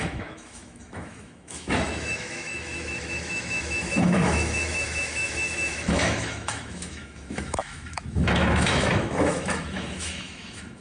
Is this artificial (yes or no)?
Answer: yes